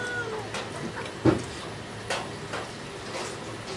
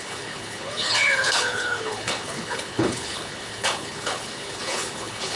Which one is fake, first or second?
second